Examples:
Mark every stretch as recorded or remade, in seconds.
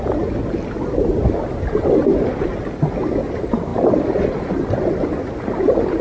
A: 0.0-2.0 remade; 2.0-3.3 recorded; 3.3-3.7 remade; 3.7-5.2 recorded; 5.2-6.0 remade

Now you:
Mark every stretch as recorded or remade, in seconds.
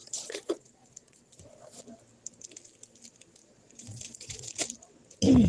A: 0.0-1.8 remade; 1.8-3.4 recorded; 3.4-4.5 remade; 4.5-5.5 recorded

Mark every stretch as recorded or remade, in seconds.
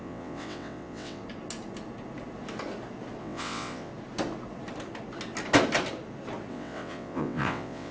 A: 0.0-1.2 remade; 1.2-3.2 recorded; 3.2-3.9 remade; 3.9-6.5 recorded; 6.5-7.9 remade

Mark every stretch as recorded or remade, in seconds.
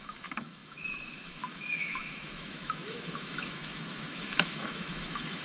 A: 0.0-5.4 remade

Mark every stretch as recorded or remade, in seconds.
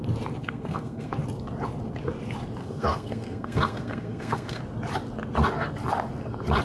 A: 0.0-0.4 recorded; 0.4-1.1 remade; 1.1-2.6 recorded; 2.6-4.6 remade; 4.6-6.6 recorded